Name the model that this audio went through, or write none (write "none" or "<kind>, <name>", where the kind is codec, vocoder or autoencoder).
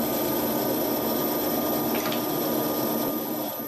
none